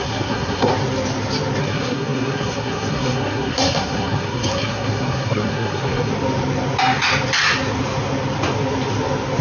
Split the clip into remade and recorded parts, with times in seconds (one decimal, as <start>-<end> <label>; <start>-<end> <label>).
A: 0.0-0.7 remade; 0.7-1.6 recorded; 1.6-6.1 remade; 6.1-9.4 recorded